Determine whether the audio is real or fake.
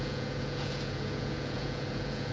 fake